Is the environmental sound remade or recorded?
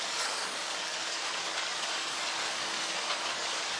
remade